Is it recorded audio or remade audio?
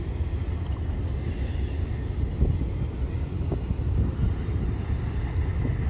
recorded